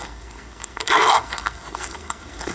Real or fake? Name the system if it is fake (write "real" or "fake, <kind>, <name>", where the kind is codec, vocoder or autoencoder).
fake, codec, SNAC